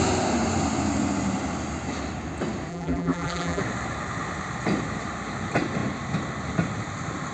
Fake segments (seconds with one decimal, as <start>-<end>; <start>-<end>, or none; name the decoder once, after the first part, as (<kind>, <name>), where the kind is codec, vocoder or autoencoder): 2.7-3.6 (vocoder, BigVGAN v2)